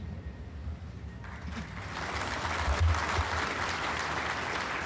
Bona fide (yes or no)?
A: yes